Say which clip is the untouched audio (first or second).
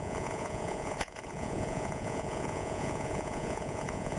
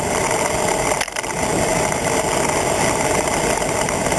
second